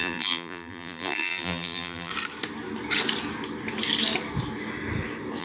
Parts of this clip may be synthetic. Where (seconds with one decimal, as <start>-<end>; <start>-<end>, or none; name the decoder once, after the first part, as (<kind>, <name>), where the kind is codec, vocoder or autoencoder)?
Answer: 0.0-2.1 (vocoder, BigVGAN v2)

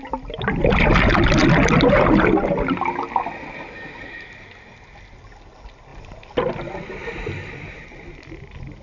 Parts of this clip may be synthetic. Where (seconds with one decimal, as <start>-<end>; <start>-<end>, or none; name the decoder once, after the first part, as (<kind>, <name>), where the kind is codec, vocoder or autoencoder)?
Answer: none

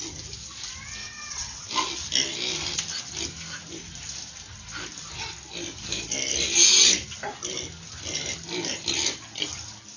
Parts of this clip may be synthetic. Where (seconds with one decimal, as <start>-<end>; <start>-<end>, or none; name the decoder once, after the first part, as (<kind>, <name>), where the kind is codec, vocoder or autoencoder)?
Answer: 1.0-1.7 (vocoder, WaveNeXt)

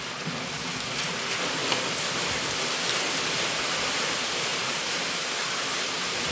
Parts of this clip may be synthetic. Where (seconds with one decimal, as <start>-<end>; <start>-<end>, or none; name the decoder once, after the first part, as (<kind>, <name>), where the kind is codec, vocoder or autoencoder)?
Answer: none

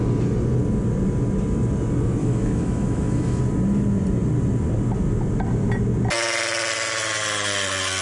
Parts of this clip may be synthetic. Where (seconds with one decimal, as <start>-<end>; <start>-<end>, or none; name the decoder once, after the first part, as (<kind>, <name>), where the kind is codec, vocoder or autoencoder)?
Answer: 2.2-3.4 (autoencoder, DAC-VAE)